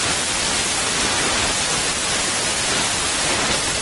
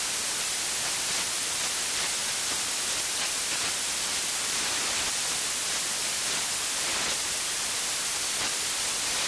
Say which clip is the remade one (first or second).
first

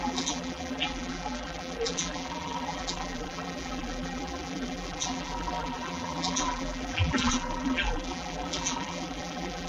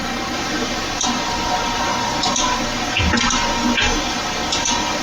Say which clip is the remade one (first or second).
first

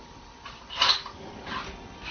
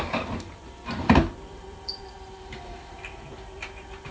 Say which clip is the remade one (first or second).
second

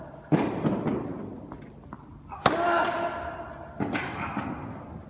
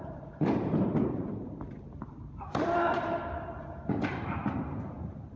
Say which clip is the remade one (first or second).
second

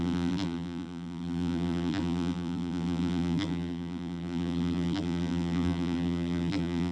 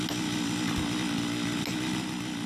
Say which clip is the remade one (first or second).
first